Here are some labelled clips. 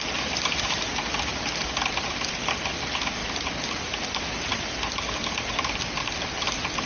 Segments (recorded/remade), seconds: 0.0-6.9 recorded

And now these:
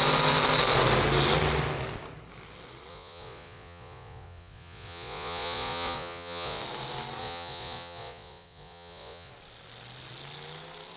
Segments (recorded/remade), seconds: 0.0-2.9 recorded; 2.9-6.6 remade; 6.6-7.2 recorded; 7.2-9.3 remade; 9.3-11.0 recorded

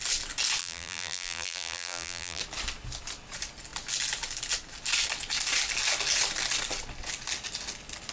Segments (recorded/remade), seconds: 0.0-0.6 recorded; 0.6-2.4 remade; 2.4-8.1 recorded

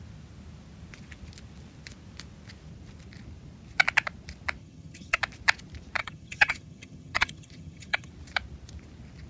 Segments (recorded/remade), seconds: 0.0-4.6 recorded; 4.6-5.2 remade; 5.2-6.0 recorded; 6.0-8.1 remade; 8.1-9.3 recorded

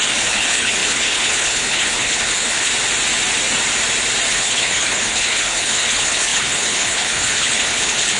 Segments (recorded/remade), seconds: 0.0-2.7 remade; 2.7-4.3 recorded; 4.3-8.2 remade